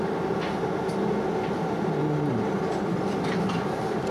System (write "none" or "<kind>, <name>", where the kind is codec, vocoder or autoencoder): none